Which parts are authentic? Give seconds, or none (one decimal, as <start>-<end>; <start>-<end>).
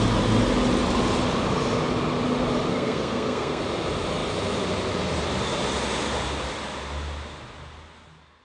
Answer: 0.0-2.7; 3.6-8.4